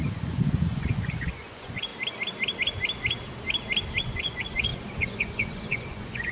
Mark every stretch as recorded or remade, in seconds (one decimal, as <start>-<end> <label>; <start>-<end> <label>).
0.0-1.9 remade; 1.9-4.0 recorded; 4.0-6.3 remade